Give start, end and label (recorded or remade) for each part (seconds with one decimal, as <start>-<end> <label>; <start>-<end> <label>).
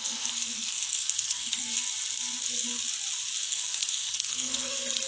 0.0-1.6 remade; 1.6-3.4 recorded; 3.4-5.1 remade